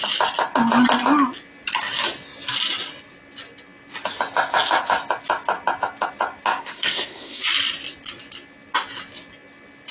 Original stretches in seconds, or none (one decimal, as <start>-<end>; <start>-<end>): 0.0-6.6; 7.4-9.9